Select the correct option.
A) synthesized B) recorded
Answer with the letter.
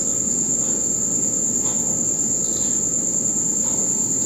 A